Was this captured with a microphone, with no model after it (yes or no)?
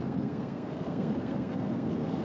no